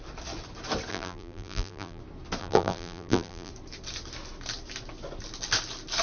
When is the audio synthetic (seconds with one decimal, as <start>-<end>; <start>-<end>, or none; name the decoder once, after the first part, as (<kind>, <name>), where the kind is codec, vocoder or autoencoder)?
0.9-2.0 (vocoder, BigVGAN v2); 2.4-3.5